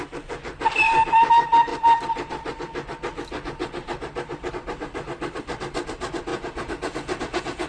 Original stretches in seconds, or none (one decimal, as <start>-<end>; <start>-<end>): 0.0-6.3